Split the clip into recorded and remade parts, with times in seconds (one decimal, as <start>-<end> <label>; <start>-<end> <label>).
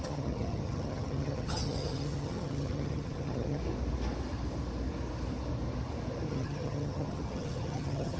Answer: 0.0-3.6 remade; 3.6-6.3 recorded; 6.3-8.2 remade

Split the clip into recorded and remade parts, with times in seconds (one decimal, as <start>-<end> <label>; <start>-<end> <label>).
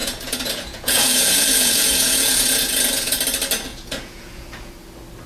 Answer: 0.0-3.2 remade; 3.2-3.7 recorded; 3.7-4.7 remade; 4.7-5.3 recorded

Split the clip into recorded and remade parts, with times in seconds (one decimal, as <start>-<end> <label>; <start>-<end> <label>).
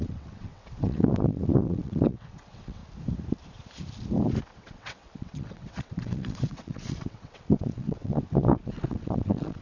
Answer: 0.0-2.8 remade; 2.8-4.4 recorded; 4.4-9.6 remade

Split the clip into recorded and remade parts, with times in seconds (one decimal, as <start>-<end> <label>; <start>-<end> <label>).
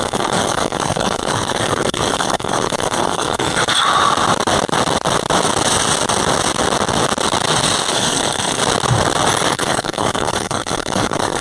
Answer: 0.0-3.6 remade; 3.6-7.9 recorded; 7.9-8.6 remade; 8.6-9.5 recorded; 9.5-11.4 remade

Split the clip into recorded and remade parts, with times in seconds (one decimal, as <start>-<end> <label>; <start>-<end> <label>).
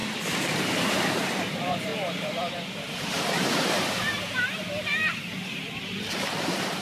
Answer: 0.0-0.7 recorded; 0.7-6.8 remade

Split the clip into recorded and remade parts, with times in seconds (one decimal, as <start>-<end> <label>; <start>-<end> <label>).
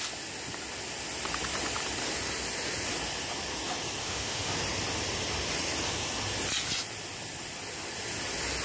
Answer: 0.0-4.0 recorded; 4.0-4.5 remade; 4.5-8.6 recorded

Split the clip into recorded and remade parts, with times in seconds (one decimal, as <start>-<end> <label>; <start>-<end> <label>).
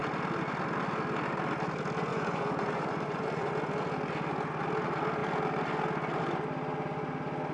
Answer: 0.0-2.1 recorded; 2.1-3.5 remade; 3.5-7.5 recorded